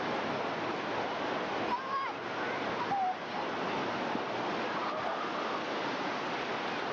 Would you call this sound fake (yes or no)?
no